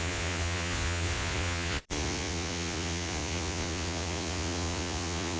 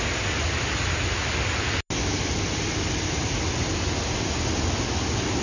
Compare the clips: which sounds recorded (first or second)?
second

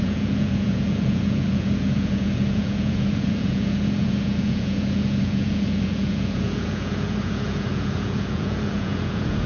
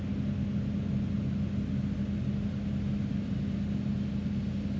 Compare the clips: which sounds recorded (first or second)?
second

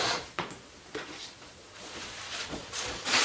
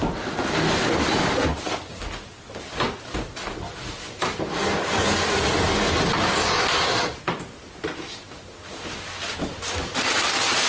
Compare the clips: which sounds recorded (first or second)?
second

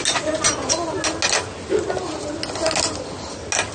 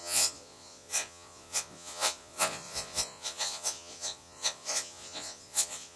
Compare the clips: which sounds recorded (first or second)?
first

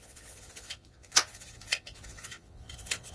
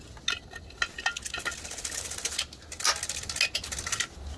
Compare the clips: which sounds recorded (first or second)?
second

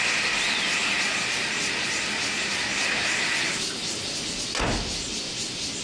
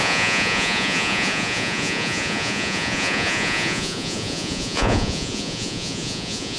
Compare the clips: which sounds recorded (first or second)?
first